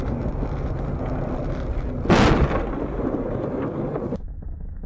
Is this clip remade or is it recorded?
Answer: recorded